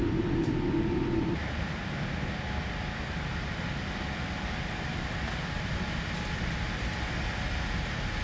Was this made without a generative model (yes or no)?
yes